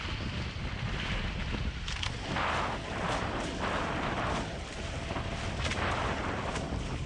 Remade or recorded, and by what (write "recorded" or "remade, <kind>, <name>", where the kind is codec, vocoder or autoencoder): recorded